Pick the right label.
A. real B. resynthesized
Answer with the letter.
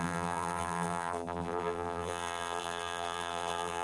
B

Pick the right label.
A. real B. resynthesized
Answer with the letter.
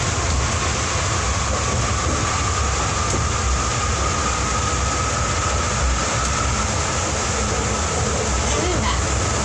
A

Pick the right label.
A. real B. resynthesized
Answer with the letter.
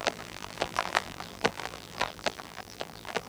B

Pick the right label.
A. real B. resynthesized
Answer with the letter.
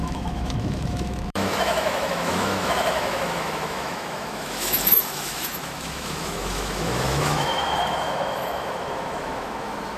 B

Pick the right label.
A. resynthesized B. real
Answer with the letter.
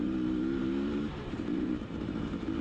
A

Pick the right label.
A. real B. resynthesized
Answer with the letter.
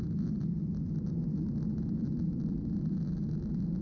A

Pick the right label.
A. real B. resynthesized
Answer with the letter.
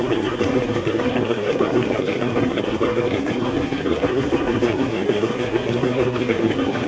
B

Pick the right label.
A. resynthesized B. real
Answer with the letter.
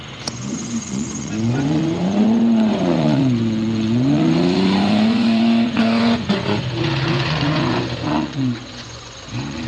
A